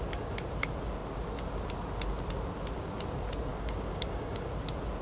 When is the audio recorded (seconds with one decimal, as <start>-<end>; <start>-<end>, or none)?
0.0-3.5; 4.5-5.0

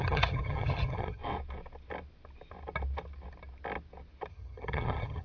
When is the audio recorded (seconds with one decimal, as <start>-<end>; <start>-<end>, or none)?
1.2-4.3

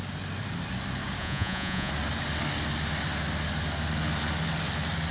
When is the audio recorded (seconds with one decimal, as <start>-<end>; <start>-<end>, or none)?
0.0-1.2; 1.9-5.1

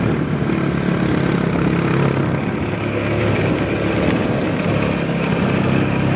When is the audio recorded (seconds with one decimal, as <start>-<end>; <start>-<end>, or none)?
0.0-6.2

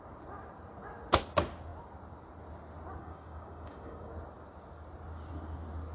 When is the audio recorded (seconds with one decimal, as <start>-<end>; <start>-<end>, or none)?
0.0-3.0; 4.1-5.9